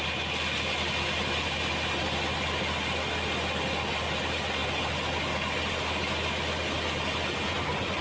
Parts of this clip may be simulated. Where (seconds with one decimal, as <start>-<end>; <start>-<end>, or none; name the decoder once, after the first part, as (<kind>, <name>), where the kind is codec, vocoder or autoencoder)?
none